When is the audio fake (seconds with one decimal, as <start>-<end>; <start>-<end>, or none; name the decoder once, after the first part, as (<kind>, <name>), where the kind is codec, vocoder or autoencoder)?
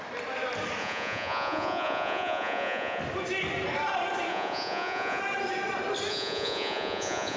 0.8-3.0 (vocoder, Vocos); 4.3-5.2; 6.1-7.4